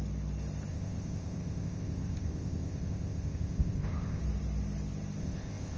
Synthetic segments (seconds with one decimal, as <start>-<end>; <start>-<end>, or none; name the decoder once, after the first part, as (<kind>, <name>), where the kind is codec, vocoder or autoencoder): 0.7-4.2 (codec, ZipCodec); 5.2-5.8